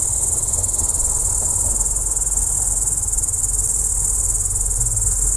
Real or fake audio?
real